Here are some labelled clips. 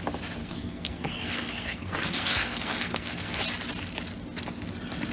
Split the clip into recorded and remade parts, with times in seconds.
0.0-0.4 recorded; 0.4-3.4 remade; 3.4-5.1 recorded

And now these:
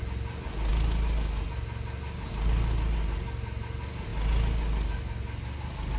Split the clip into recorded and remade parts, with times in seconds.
0.0-6.0 recorded

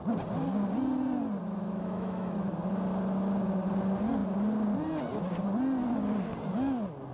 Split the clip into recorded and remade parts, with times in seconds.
0.0-1.4 recorded; 1.4-2.5 remade; 2.5-7.1 recorded

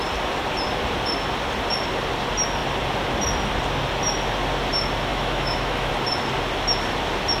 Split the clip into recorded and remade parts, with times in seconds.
0.0-5.1 recorded; 5.1-5.9 remade; 5.9-7.4 recorded

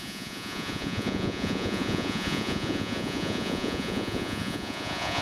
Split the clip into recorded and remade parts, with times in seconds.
0.0-5.2 remade

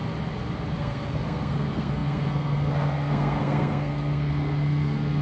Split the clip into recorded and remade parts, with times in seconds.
0.0-0.8 recorded; 0.8-5.2 remade

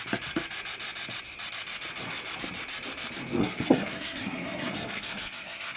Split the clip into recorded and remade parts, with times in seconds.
0.0-3.4 recorded; 3.4-5.8 remade